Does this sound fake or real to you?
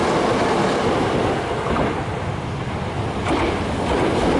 real